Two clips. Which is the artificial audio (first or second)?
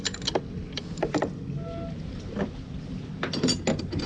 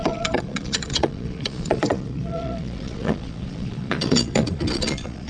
second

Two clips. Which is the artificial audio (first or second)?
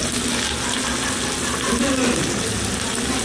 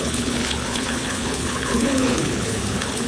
second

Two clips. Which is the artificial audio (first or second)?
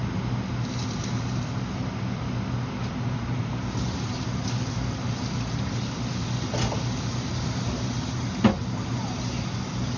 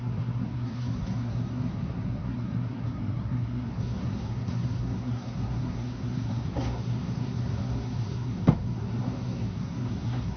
second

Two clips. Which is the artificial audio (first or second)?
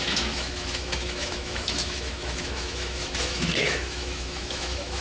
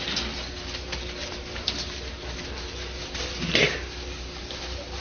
first